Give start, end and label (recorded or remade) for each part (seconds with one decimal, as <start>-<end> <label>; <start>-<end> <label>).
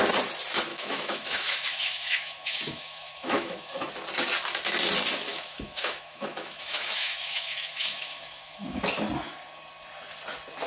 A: 0.0-0.7 recorded; 0.7-3.9 remade; 3.9-5.3 recorded; 5.3-8.8 remade; 8.8-10.7 recorded